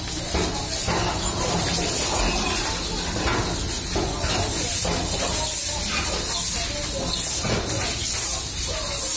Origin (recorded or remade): recorded